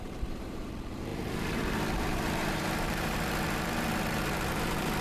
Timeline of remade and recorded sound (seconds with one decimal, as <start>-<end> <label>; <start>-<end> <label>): 0.0-5.0 remade